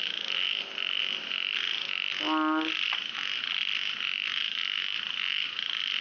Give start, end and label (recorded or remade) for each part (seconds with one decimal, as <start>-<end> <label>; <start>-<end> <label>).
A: 0.0-6.0 recorded